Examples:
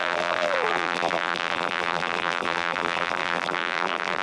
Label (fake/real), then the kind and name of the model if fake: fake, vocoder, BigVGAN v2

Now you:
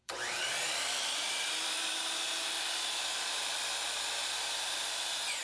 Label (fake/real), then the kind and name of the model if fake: fake, vocoder, BigVGAN v2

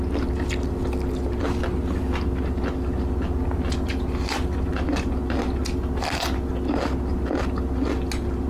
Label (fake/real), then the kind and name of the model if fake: real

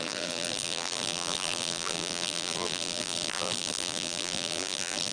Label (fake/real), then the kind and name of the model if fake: fake, vocoder, BigVGAN v2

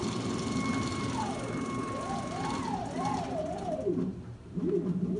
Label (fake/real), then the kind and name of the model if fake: fake, vocoder, BigVGAN v2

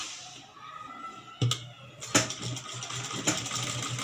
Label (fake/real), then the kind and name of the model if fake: real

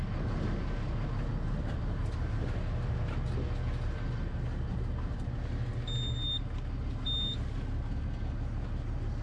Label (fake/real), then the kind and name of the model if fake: real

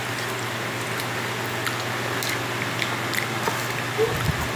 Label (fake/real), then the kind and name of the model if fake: real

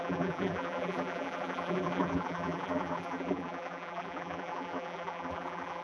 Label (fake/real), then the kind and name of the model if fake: fake, vocoder, BigVGAN v2